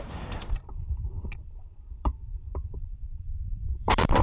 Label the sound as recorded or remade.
remade